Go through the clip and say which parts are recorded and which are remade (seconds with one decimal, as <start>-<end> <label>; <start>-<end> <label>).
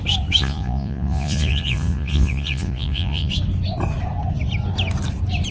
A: 0.0-0.4 recorded; 0.4-3.3 remade; 3.3-5.5 recorded